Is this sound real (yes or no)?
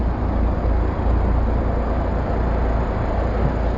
yes